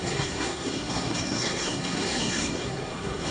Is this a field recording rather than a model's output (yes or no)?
no